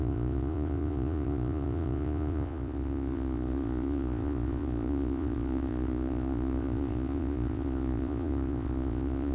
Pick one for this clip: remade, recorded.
remade